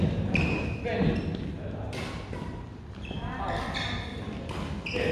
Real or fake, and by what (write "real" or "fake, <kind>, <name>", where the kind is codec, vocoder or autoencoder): real